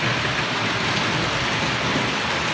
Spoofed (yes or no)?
no